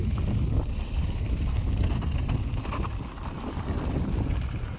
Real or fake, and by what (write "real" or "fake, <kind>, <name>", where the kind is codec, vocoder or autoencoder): real